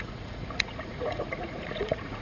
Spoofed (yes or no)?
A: yes